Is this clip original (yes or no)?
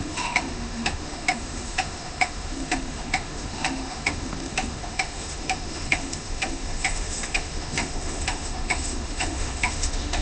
no